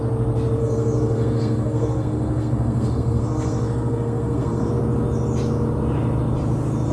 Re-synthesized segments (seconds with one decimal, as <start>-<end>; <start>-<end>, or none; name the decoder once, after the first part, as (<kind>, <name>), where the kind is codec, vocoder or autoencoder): 0.6-4.7 (codec, SNAC)